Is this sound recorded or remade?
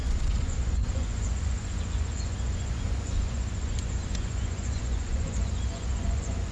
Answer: remade